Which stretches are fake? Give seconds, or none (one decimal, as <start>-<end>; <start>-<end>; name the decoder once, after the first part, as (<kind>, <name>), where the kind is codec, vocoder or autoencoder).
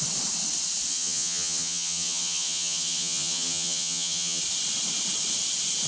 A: 0.9-4.4 (vocoder, HiFi-GAN)